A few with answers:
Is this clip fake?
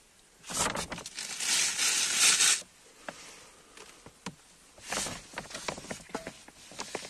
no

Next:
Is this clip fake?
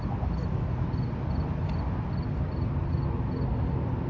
no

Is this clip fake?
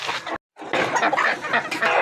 no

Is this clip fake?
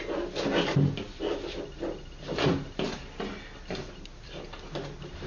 no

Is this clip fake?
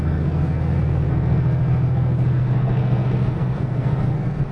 yes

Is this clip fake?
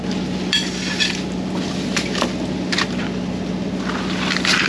no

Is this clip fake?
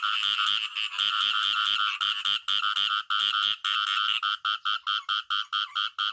no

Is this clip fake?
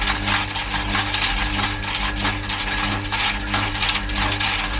no